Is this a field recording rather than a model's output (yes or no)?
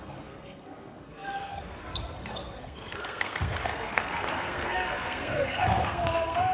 no